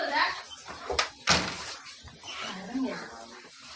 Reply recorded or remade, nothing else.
recorded